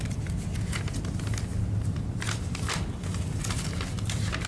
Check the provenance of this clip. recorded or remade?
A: recorded